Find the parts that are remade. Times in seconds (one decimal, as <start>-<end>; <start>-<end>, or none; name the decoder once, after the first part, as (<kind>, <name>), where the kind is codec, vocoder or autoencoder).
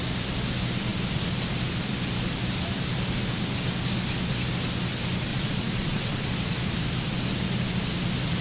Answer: 5.3-6.3 (vocoder, Vocos)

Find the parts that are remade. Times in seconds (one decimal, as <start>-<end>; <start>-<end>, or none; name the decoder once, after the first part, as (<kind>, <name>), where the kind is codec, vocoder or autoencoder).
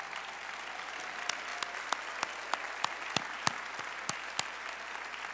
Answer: none